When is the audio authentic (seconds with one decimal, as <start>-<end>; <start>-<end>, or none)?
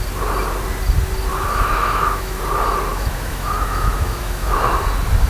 0.0-1.3; 2.4-2.9; 4.7-5.3